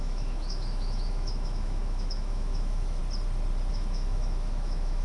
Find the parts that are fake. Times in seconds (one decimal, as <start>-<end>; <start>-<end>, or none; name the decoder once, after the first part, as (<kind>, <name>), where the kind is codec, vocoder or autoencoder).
0.0-3.0 (autoencoder, DAC-VAE); 3.7-5.0